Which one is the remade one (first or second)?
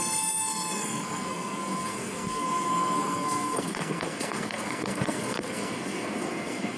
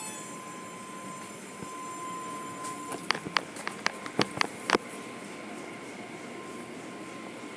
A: first